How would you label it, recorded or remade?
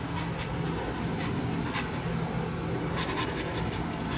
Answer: recorded